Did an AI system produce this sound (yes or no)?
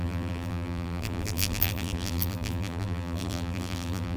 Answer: yes